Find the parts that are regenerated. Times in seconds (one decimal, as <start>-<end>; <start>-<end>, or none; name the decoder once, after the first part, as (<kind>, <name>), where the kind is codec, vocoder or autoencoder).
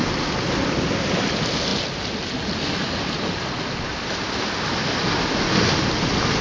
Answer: none